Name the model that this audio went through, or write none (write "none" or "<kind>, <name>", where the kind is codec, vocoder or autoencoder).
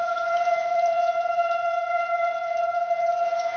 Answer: vocoder, Vocos